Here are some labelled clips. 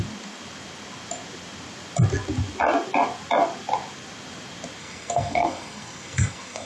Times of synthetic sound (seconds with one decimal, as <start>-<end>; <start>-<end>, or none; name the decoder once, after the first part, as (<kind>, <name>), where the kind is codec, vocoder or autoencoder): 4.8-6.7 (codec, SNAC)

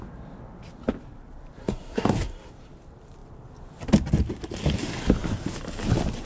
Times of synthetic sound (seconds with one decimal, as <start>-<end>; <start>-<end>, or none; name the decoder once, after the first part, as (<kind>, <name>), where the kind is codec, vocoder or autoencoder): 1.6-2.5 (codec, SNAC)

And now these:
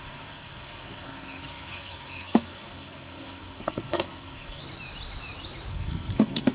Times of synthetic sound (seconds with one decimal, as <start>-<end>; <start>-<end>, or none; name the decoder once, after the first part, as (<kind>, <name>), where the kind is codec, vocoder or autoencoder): 0.0-4.6 (codec, SNAC); 5.7-6.5